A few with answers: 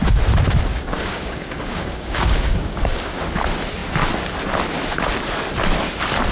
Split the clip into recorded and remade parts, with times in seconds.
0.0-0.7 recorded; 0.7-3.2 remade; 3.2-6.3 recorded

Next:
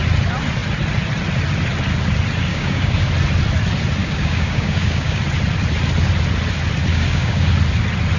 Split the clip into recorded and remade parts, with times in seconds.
0.0-2.5 recorded; 2.5-3.1 remade; 3.1-4.0 recorded; 4.0-5.2 remade; 5.2-6.9 recorded; 6.9-7.5 remade; 7.5-8.2 recorded

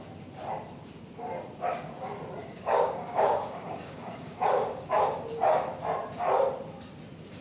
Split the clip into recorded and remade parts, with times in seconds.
0.0-2.4 recorded; 2.4-5.1 remade; 5.1-7.4 recorded

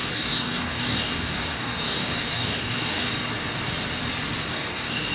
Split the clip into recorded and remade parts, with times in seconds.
0.0-3.1 remade; 3.1-4.5 recorded; 4.5-5.1 remade

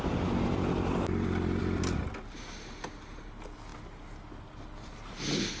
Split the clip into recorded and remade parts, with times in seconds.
0.0-5.6 recorded

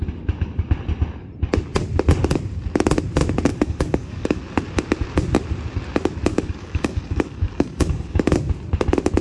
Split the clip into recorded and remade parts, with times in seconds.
0.0-3.5 recorded; 3.5-4.4 remade; 4.4-6.3 recorded; 6.3-8.3 remade; 8.3-9.2 recorded